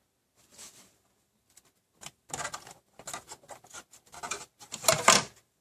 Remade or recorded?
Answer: recorded